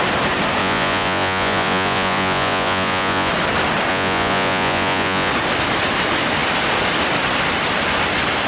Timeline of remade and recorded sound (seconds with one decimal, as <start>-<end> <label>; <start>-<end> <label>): 0.0-0.6 recorded; 0.6-3.3 remade; 3.3-3.9 recorded; 3.9-5.3 remade; 5.3-8.5 recorded